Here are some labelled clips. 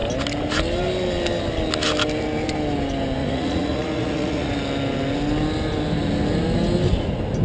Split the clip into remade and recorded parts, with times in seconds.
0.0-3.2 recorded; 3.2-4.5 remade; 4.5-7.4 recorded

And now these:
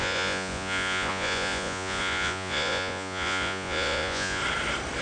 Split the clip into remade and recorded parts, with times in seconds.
0.0-4.4 remade; 4.4-5.0 recorded

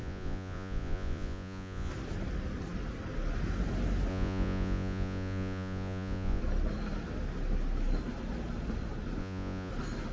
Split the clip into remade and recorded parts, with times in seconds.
0.0-1.9 remade; 1.9-4.1 recorded; 4.1-6.4 remade; 6.4-9.2 recorded; 9.2-9.7 remade; 9.7-10.1 recorded

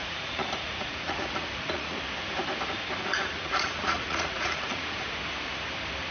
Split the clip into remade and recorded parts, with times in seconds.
0.0-2.0 remade; 2.0-3.1 recorded; 3.1-5.1 remade; 5.1-6.1 recorded

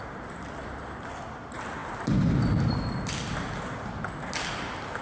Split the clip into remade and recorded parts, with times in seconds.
0.0-5.0 recorded

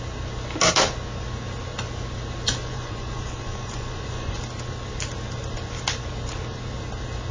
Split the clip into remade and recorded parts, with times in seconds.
0.0-2.6 recorded; 2.6-4.4 remade; 4.4-7.3 recorded

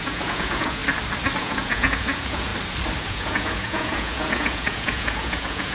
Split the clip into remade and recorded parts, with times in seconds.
0.0-0.8 remade; 0.8-1.4 recorded; 1.4-2.5 remade; 2.5-3.0 recorded; 3.0-5.7 remade

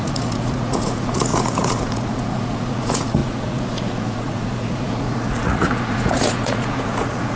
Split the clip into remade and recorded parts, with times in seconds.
0.0-7.4 remade